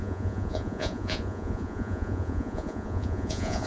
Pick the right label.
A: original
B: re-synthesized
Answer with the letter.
B